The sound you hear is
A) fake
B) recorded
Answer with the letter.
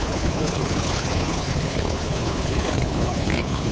A